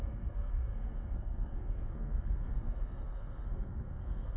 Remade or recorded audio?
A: remade